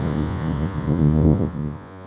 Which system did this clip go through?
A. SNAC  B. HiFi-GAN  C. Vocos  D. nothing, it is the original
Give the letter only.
C